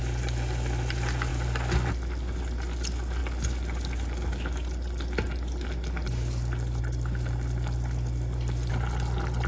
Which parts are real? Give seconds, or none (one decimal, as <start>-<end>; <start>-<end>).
0.0-9.5